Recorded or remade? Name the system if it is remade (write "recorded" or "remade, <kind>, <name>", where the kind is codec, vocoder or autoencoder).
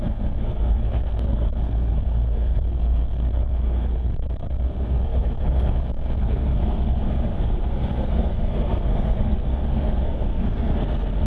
remade, codec, SNAC